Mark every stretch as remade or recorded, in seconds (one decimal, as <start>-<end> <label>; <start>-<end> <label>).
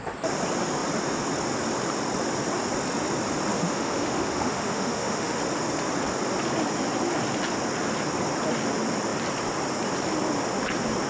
0.0-3.5 recorded; 3.5-5.4 remade; 5.4-11.1 recorded